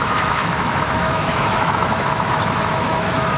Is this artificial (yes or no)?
yes